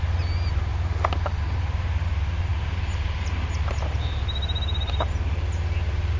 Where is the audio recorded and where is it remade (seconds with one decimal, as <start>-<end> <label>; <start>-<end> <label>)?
0.0-6.2 recorded